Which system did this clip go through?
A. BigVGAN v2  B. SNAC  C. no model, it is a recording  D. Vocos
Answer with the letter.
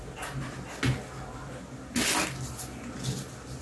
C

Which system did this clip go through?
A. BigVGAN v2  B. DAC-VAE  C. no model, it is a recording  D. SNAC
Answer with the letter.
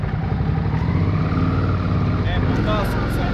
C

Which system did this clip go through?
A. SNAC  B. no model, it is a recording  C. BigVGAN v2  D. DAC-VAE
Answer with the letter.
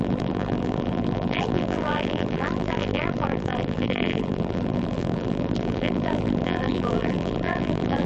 C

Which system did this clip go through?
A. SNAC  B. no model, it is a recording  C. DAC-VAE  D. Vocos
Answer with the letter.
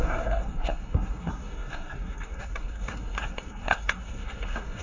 A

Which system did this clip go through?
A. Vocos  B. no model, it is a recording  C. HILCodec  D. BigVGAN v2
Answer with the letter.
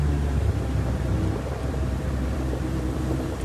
D